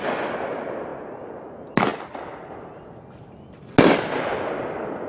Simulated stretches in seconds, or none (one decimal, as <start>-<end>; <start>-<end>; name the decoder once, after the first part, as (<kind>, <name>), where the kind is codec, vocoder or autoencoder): 1.9-2.5 (vocoder, BigVGAN v2)